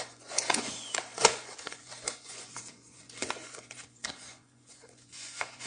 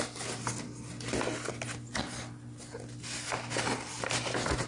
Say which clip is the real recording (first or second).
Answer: second